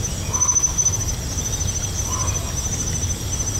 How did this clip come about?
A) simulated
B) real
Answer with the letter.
B